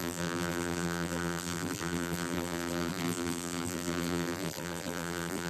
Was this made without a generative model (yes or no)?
no